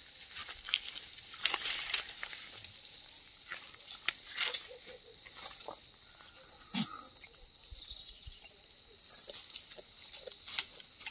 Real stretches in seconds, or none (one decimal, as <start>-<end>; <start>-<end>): 0.0-11.1